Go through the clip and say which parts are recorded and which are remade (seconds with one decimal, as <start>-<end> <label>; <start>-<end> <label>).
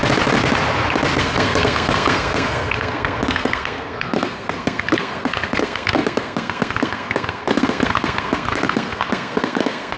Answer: 0.0-1.2 recorded; 1.2-10.0 remade